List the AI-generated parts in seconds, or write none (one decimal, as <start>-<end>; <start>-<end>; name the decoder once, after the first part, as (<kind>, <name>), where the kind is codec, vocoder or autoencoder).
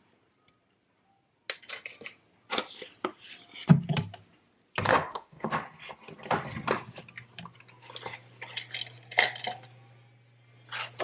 4.9-5.5 (autoencoder, DAC-VAE)